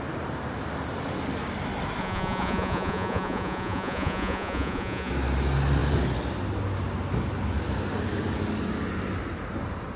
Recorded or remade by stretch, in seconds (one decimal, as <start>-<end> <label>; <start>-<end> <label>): 0.0-2.0 recorded; 2.0-5.1 remade; 5.1-10.0 recorded